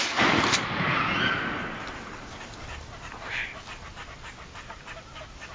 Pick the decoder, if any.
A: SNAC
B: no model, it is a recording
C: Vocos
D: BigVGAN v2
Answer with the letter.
B